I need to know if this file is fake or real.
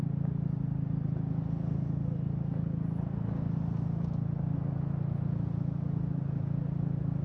real